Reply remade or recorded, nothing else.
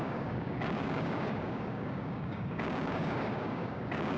remade